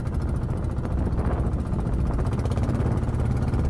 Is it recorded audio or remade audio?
recorded